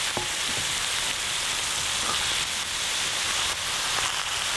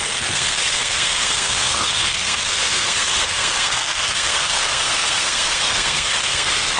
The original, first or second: first